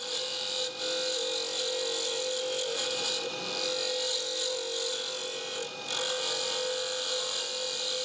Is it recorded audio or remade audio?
recorded